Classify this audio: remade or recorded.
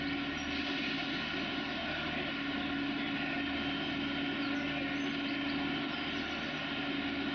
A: recorded